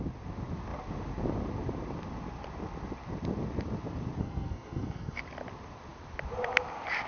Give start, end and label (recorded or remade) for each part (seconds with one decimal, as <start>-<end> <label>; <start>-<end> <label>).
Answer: 0.0-4.2 recorded; 4.2-5.2 remade; 5.2-7.1 recorded